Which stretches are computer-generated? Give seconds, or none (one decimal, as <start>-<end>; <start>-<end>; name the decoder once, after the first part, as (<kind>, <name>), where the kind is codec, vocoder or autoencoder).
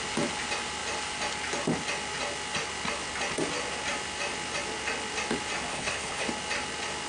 5.7-6.3 (codec, HILCodec)